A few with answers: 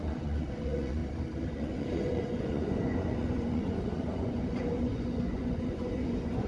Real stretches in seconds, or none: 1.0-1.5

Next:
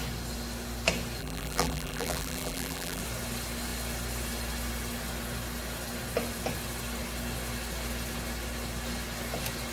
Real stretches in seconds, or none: 0.0-1.2; 3.0-9.7